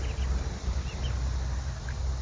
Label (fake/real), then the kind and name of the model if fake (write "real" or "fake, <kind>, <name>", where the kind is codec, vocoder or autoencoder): real